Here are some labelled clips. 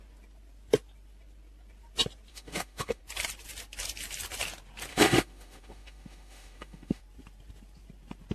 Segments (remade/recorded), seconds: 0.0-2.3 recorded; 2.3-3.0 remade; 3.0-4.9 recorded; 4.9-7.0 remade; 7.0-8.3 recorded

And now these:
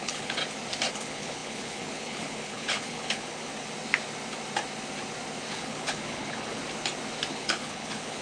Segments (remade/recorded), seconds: 0.0-0.4 remade; 0.4-0.9 recorded; 0.9-3.5 remade; 3.5-5.5 recorded; 5.5-6.6 remade; 6.6-7.3 recorded; 7.3-8.2 remade

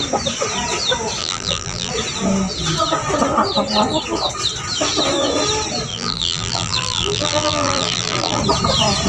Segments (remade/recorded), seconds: 0.0-1.2 recorded; 1.2-1.9 remade; 1.9-5.9 recorded; 5.9-8.4 remade; 8.4-9.1 recorded